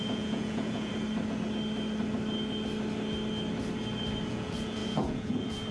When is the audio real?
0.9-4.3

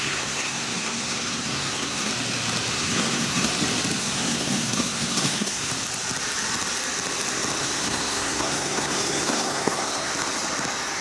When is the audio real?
2.1-2.7; 3.5-4.0; 5.7-7.6; 10.1-11.0

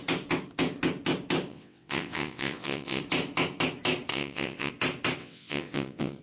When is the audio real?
0.0-1.5; 3.0-4.1; 4.7-5.2